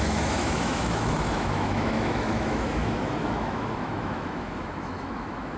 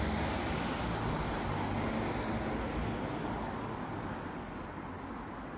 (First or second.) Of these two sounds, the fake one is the first